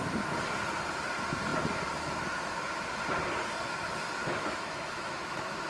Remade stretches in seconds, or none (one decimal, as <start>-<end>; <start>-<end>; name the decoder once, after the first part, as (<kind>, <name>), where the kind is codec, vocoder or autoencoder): 4.2-5.7 (autoencoder, DAC-VAE)